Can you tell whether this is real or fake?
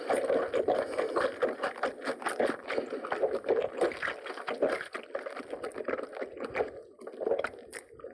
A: real